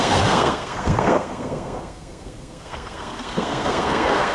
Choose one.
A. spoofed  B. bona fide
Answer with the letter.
A